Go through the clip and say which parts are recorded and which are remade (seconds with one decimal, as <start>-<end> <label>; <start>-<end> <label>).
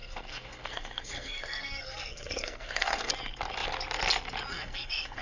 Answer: 0.0-3.1 remade; 3.1-4.5 recorded; 4.5-5.2 remade